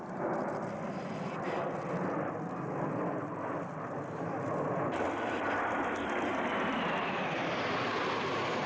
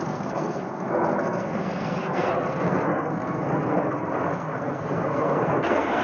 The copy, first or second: second